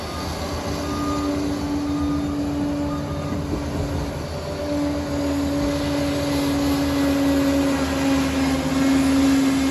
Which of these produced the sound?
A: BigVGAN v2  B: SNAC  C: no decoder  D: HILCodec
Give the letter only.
C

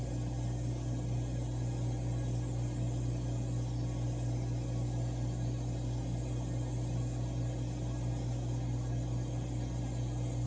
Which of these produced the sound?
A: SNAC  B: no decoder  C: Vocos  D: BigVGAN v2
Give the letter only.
B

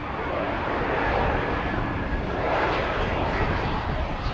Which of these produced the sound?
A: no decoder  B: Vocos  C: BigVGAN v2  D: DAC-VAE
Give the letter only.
A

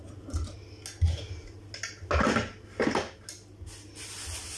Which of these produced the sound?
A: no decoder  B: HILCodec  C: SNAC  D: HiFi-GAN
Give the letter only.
A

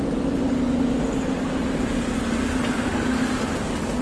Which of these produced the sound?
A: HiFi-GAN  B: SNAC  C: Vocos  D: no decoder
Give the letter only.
D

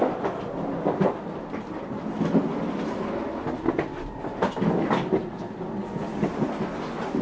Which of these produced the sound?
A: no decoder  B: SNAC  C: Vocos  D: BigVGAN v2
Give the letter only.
A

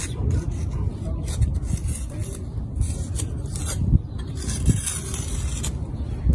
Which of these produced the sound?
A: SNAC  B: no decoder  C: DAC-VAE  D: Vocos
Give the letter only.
B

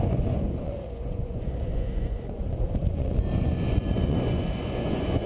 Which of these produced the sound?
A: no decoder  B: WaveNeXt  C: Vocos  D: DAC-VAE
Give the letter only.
C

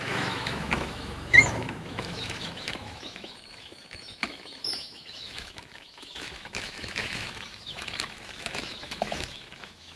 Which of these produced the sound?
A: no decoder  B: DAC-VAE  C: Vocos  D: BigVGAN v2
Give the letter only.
B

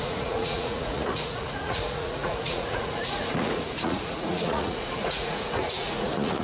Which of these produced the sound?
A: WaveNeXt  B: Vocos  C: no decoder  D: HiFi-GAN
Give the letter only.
B